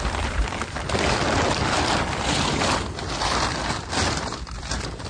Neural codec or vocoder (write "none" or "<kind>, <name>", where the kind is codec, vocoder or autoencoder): none